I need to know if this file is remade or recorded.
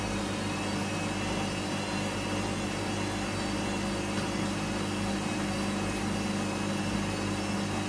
recorded